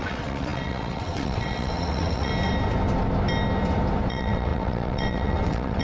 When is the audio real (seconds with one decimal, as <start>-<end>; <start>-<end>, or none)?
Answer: 2.3-4.1